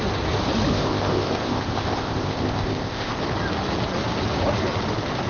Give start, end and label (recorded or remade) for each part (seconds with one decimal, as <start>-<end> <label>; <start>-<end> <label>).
0.0-0.7 recorded; 0.7-3.2 remade; 3.2-5.3 recorded